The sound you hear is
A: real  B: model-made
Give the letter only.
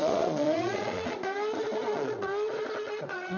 B